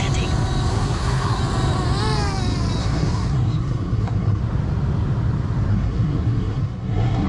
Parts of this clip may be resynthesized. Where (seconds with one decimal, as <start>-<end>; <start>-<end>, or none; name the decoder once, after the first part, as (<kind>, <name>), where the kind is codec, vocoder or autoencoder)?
0.7-1.4 (codec, SNAC); 2.8-4.4; 5.7-7.3

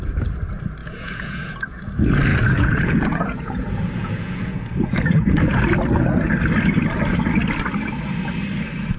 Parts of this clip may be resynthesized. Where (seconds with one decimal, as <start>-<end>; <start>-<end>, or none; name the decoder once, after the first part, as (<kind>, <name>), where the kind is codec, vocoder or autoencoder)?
0.8-1.8 (vocoder, Vocos); 2.3-5.6

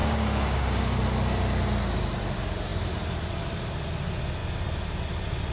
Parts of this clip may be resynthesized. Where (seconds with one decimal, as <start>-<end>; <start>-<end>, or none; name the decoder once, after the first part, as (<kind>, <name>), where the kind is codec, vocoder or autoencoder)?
0.0-1.0 (codec, DAC)

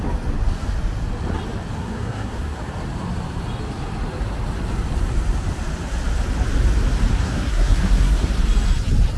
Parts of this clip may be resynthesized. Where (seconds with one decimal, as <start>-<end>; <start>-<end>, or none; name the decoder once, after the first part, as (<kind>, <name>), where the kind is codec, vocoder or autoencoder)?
1.8-2.6 (codec, SNAC); 7.1-8.3

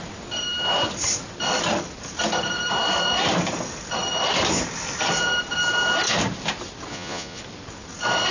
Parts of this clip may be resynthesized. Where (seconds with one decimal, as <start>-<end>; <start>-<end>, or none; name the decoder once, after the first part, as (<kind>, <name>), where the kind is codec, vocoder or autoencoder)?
6.9-7.4 (vocoder, Vocos)

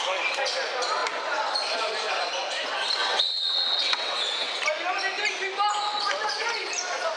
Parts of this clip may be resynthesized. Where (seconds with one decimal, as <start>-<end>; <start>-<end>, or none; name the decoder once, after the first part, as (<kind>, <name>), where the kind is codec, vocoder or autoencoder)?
3.0-4.6 (vocoder, WaveNeXt)

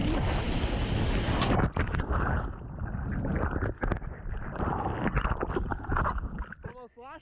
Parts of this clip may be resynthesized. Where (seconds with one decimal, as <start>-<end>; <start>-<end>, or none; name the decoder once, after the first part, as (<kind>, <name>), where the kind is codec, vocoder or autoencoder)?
none